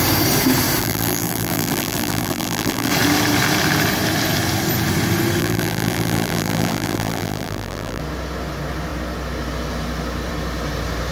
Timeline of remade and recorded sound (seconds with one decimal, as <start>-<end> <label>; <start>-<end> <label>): 0.0-0.8 recorded; 0.8-2.9 remade; 2.9-5.4 recorded; 5.4-8.0 remade; 8.0-11.1 recorded